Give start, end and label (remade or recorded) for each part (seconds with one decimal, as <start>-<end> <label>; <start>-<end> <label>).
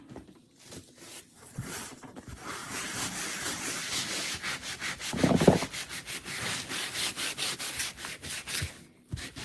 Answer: 0.0-9.4 recorded